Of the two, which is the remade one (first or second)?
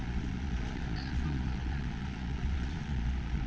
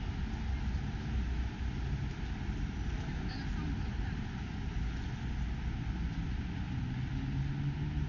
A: first